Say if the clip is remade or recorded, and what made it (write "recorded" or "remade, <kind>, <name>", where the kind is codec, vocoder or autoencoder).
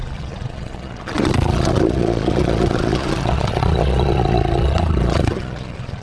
remade, vocoder, Vocos